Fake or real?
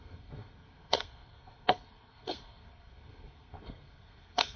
fake